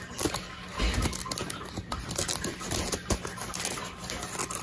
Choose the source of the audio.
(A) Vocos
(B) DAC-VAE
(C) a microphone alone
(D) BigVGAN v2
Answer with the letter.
C